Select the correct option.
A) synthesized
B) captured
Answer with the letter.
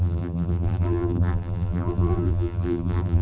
A